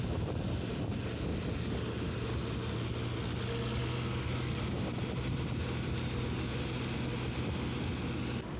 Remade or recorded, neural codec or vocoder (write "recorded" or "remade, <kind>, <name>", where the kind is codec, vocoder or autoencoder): recorded